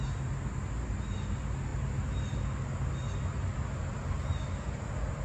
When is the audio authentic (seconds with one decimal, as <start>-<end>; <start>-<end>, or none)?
0.0-5.2